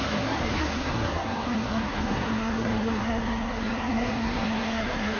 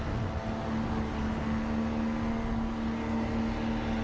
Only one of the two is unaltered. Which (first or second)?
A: second